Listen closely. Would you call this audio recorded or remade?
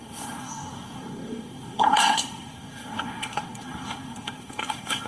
remade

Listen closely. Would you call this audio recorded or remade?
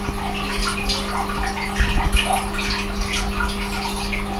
recorded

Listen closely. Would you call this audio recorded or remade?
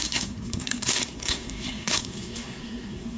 remade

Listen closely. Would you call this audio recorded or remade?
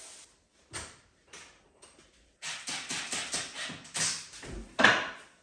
recorded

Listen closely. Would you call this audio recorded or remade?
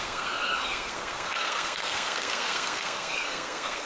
remade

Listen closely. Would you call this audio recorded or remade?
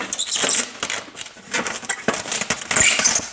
recorded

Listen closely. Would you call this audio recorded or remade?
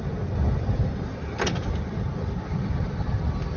recorded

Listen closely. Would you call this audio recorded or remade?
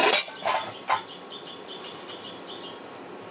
recorded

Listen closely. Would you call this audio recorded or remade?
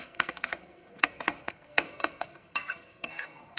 remade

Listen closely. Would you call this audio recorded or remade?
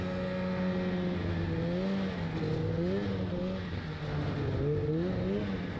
recorded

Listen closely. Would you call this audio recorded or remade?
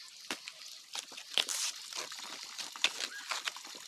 recorded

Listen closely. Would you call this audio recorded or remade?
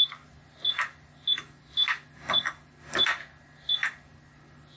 recorded